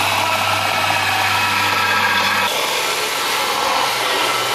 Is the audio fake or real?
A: real